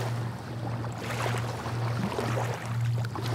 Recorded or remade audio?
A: recorded